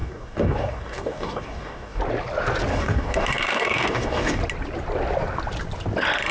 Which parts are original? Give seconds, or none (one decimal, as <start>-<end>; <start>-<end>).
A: 2.0-2.7; 4.4-6.3